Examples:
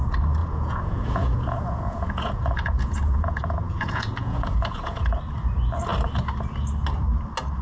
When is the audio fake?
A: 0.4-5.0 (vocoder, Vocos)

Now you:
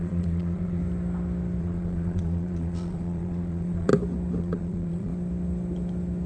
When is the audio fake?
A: 0.0-0.8 (vocoder, Vocos); 1.6-3.9; 4.4-5.1

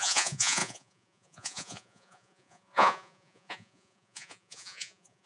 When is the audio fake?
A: 0.0-5.3 (vocoder, Vocos)

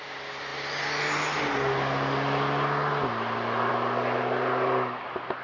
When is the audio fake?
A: none

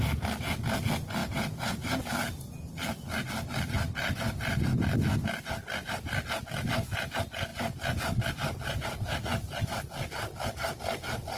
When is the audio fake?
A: 1.2-2.0 (vocoder, Vocos)

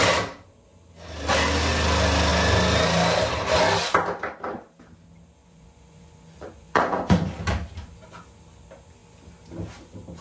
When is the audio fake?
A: 5.4-7.3 (vocoder, Vocos)

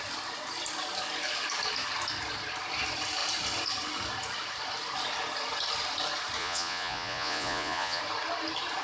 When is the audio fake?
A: 6.4-8.0 (vocoder, Vocos)

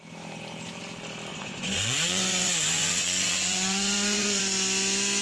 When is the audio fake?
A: 1.3-4.4 (vocoder, Vocos)